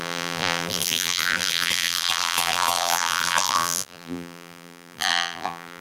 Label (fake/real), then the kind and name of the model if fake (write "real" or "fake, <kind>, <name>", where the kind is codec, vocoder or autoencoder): fake, vocoder, BigVGAN v2